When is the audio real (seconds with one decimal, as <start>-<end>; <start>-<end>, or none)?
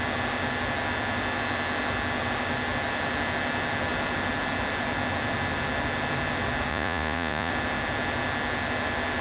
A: 0.0-6.7; 7.5-9.2